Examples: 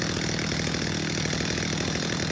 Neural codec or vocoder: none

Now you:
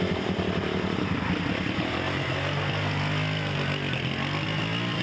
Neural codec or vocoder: none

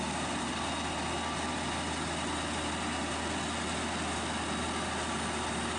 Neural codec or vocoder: none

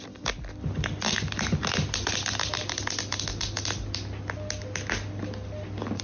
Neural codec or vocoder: none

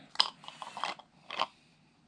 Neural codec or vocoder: none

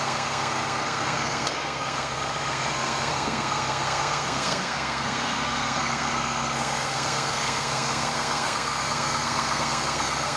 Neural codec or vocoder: codec, SNAC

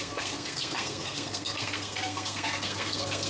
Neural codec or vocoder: codec, SNAC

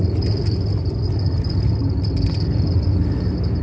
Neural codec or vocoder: none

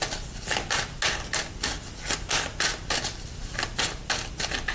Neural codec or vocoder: none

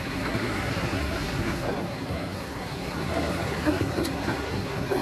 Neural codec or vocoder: codec, SNAC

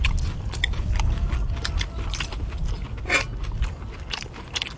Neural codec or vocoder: none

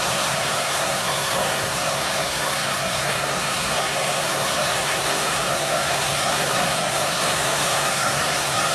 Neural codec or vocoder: codec, SNAC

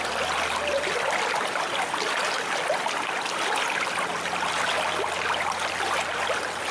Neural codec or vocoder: none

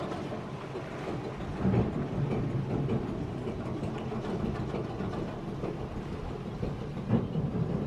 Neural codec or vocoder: none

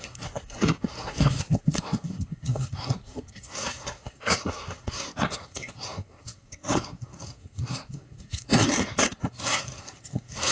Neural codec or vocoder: codec, SNAC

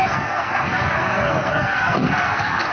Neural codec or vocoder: codec, SNAC